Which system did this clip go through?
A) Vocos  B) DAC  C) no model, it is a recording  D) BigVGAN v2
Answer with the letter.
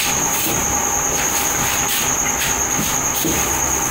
C